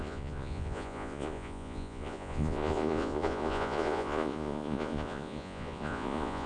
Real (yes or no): no